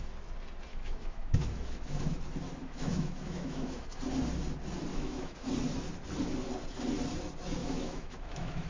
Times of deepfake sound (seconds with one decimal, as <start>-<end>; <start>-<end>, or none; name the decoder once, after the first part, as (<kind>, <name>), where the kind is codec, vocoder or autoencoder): 0.7-2.2 (autoencoder, DAC-VAE); 2.6-4.0; 4.9-5.5; 7.6-8.7